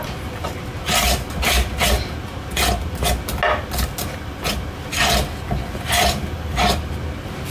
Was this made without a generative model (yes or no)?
yes